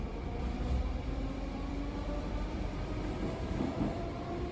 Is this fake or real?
fake